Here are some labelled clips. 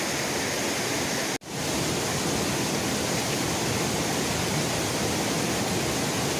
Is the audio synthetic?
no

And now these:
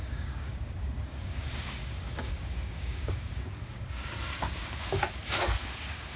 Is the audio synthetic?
yes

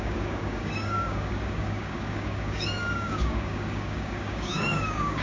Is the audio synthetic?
yes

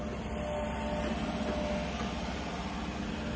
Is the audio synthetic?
no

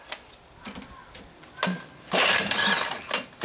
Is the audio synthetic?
no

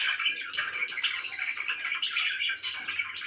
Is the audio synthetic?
no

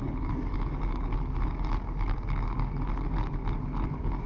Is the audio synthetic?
yes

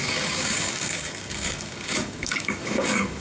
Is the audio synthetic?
yes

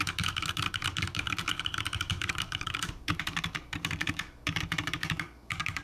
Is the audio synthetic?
yes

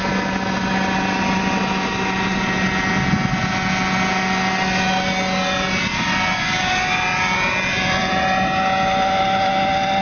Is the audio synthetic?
no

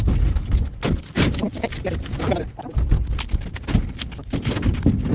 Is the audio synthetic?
no